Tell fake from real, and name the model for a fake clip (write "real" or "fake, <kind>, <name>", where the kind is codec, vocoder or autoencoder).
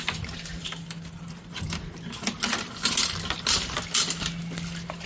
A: real